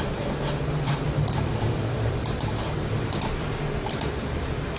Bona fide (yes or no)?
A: no